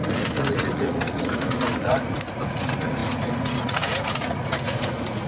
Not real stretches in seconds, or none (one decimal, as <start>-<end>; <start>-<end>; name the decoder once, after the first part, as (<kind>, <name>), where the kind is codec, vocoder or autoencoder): 0.0-5.3 (vocoder, Vocos)